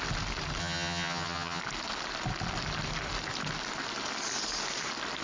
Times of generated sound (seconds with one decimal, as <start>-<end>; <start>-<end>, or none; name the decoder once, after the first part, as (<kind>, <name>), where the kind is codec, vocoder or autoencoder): 0.6-1.6 (vocoder, HiFi-GAN)